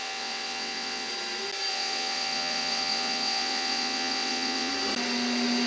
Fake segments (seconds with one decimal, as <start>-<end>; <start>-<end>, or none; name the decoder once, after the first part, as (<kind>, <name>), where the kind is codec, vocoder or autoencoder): 0.0-1.1 (vocoder, WaveNeXt); 1.7-4.7

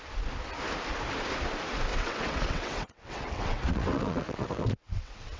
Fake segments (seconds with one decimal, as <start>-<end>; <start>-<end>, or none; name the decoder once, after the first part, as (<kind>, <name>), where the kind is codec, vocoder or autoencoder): 1.9-5.4 (vocoder, WaveNeXt)